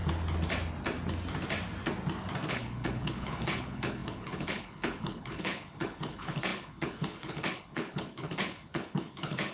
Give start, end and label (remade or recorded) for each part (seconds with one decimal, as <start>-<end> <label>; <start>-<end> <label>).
0.0-2.5 recorded; 2.5-9.5 remade